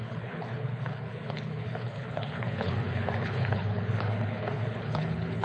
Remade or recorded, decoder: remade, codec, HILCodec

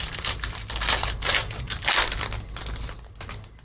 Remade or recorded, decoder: recorded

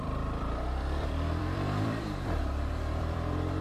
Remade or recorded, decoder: remade, vocoder, BigVGAN v2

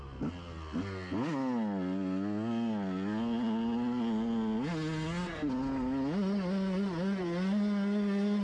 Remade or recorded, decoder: recorded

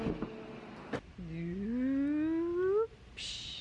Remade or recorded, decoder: recorded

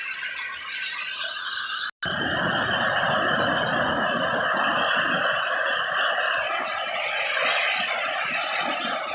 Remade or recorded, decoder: recorded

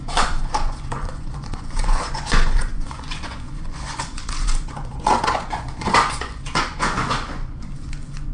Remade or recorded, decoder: remade, vocoder, Vocos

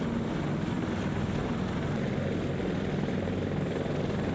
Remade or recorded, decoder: recorded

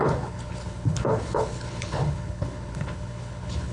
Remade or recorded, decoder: remade, codec, HILCodec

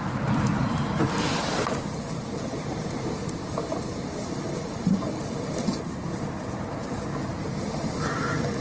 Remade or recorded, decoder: remade, vocoder, BigVGAN v2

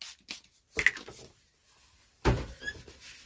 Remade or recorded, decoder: recorded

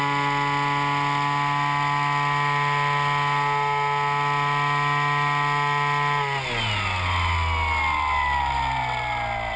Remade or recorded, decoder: recorded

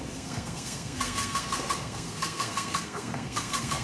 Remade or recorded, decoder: remade, codec, SNAC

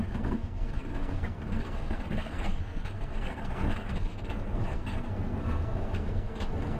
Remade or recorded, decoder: remade, codec, SNAC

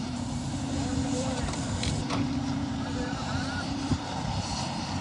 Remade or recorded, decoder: remade, vocoder, BigVGAN v2